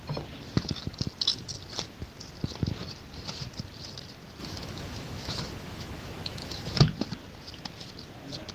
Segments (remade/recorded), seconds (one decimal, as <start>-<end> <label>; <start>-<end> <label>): 0.0-4.4 recorded; 4.4-6.8 remade; 6.8-8.5 recorded